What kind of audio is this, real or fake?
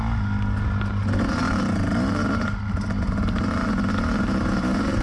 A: real